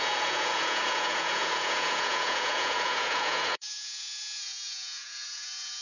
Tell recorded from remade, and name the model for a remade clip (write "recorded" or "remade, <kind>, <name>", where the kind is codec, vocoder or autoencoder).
remade, vocoder, Vocos